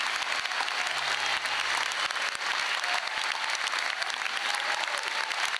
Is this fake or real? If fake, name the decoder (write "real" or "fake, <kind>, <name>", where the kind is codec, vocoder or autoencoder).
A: real